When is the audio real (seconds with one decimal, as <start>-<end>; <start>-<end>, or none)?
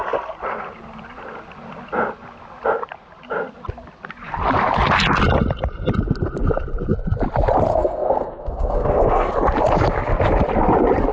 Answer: 0.0-7.7; 9.3-11.1